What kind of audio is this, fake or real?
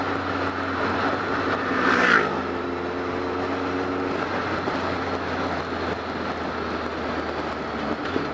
real